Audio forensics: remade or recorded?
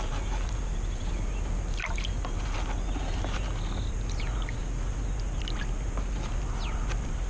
recorded